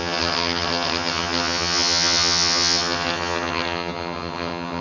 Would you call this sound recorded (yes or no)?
no